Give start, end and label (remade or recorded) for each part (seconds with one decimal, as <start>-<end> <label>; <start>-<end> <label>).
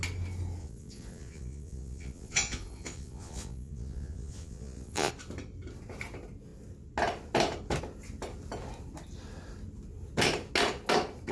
0.0-0.6 recorded; 0.6-5.1 remade; 5.1-11.3 recorded